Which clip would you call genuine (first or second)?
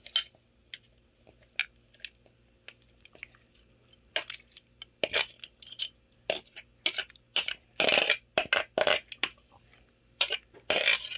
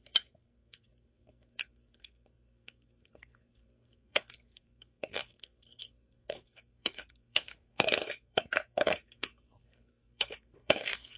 first